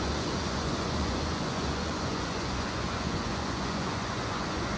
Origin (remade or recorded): remade